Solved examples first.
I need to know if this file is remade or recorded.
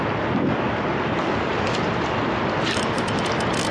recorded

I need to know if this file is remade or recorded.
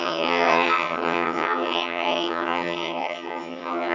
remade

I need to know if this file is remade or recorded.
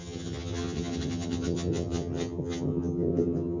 remade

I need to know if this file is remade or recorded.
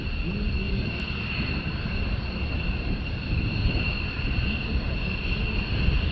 recorded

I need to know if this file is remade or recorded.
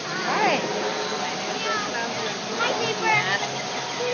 recorded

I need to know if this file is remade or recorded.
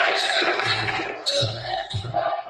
remade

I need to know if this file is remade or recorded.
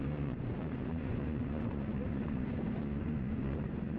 remade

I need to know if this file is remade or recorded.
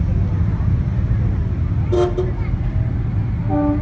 recorded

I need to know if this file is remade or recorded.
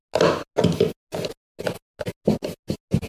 recorded